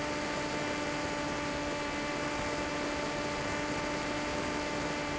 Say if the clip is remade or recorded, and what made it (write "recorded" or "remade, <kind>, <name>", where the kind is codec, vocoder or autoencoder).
recorded